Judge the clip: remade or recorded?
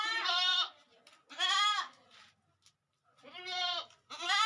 recorded